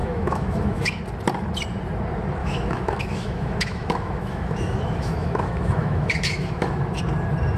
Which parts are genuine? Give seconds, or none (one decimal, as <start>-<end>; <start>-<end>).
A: 1.0-2.4; 7.0-7.6